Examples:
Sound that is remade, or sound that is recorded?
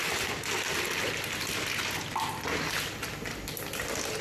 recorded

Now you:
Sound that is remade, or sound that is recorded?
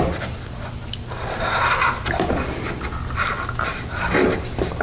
recorded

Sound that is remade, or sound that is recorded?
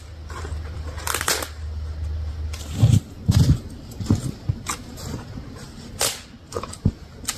recorded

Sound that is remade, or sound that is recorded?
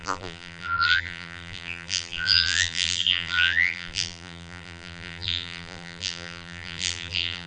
remade